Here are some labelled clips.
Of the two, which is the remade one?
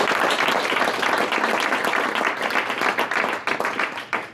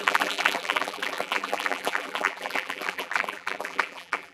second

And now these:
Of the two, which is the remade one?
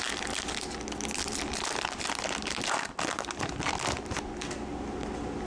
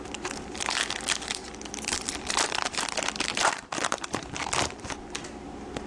second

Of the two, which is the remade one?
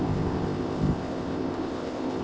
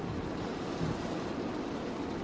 first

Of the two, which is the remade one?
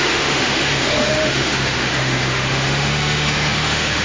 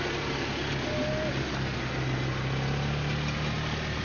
first